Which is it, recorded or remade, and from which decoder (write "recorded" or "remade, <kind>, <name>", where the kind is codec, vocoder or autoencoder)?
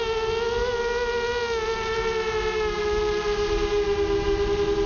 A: recorded